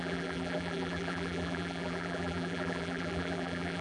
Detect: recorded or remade remade